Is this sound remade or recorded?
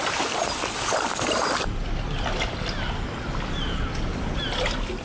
recorded